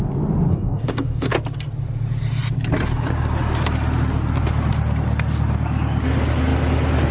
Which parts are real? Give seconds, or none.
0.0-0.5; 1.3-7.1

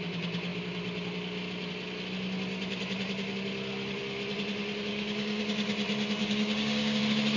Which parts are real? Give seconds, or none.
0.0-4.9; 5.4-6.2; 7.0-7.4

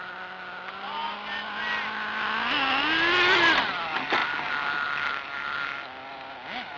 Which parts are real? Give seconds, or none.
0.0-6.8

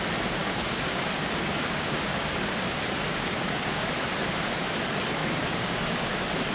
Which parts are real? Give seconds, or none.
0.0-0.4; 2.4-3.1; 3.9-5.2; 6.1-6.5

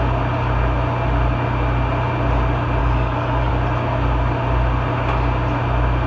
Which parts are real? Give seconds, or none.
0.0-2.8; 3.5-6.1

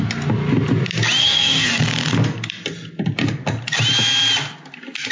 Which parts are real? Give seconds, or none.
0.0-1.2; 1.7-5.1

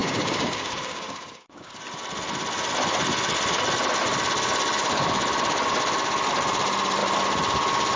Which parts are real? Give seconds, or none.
1.8-8.0

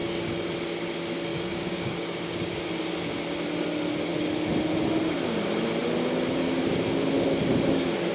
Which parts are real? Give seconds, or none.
0.5-1.3; 2.5-8.1